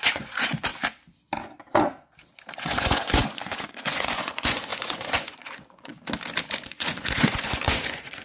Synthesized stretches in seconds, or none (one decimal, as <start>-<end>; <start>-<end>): 0.0-0.7; 2.5-5.9; 6.5-8.2